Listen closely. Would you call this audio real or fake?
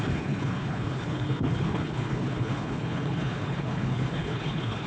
fake